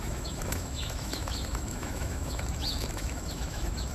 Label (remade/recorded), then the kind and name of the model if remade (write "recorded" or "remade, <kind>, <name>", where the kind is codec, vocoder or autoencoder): remade, autoencoder, DAC-VAE